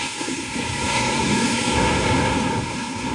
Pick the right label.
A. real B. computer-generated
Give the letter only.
B